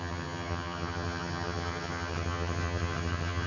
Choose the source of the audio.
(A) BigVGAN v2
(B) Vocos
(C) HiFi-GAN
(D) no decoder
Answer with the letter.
C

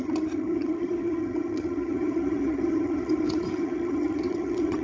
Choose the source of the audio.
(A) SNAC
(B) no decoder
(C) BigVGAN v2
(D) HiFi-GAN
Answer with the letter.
D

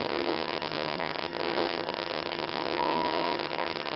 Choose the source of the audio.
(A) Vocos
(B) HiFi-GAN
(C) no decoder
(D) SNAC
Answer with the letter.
B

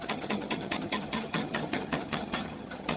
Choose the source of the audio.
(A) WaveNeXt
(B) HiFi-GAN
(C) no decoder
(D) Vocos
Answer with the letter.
B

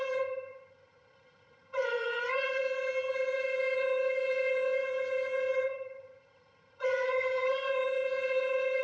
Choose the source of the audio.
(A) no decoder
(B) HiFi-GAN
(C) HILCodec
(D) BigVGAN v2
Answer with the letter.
B